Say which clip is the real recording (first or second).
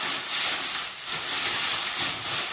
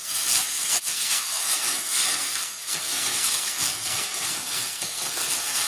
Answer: first